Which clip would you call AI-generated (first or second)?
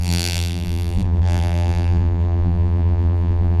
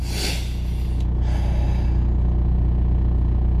first